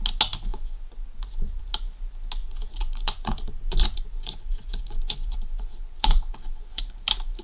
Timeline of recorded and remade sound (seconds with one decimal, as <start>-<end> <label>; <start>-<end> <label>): 0.0-0.5 recorded; 0.5-1.6 remade; 1.6-2.4 recorded; 2.4-6.8 remade; 6.8-7.4 recorded